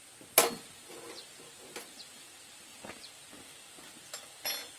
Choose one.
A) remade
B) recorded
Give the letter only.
B